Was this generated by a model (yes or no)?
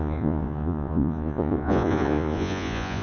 yes